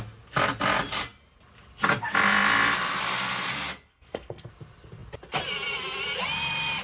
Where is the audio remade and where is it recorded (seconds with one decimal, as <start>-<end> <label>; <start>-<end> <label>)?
0.0-3.9 recorded; 3.9-4.5 remade; 4.5-6.8 recorded